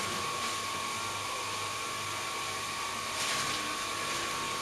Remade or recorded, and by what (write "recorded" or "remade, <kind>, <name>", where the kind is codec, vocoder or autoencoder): recorded